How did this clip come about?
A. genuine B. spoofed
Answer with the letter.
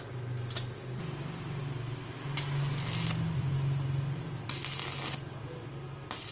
A